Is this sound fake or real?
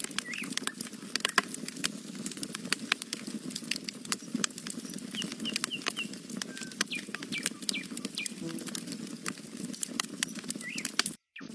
real